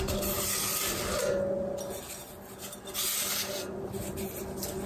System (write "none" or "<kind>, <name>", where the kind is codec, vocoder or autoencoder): none